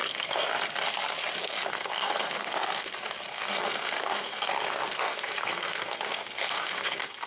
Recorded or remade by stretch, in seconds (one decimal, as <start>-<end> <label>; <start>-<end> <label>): 0.0-0.5 remade; 0.5-1.4 recorded; 1.4-2.9 remade; 2.9-3.3 recorded; 3.3-7.3 remade

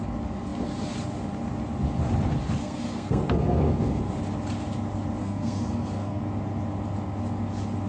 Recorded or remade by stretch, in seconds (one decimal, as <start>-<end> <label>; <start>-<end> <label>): 0.0-2.6 recorded; 2.6-4.1 remade; 4.1-5.2 recorded; 5.2-6.2 remade; 6.2-7.9 recorded